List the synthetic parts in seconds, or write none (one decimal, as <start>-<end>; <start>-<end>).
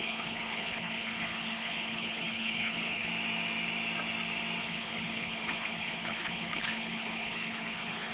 0.0-3.1; 4.6-8.1